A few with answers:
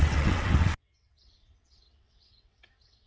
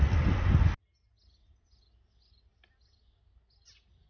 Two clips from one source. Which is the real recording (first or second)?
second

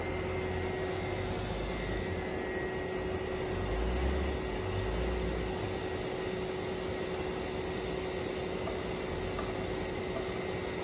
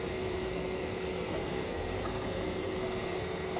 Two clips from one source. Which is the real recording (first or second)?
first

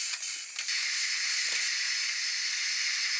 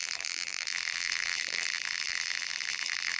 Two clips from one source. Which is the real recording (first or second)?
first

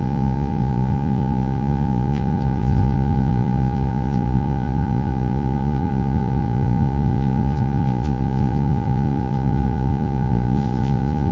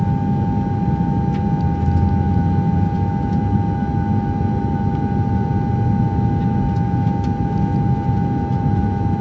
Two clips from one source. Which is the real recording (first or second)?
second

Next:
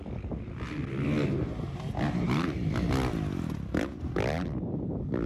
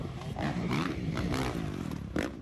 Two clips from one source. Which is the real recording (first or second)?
first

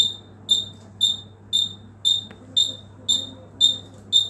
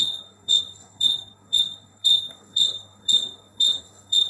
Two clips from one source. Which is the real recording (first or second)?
first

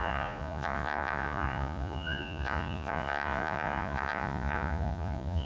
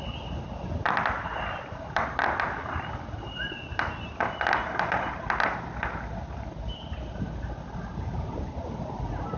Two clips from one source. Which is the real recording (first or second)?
second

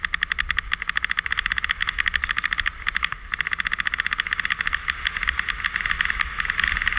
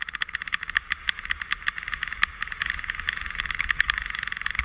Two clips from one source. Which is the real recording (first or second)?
first